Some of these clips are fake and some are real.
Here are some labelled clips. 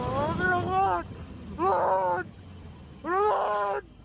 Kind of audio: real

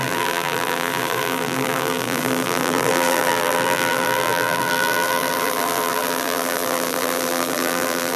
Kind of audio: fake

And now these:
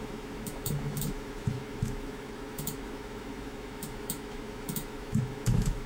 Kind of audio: fake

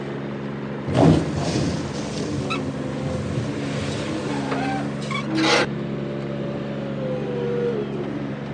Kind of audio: real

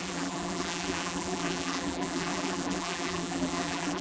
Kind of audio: fake